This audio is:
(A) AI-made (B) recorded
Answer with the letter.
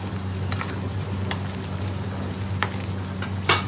B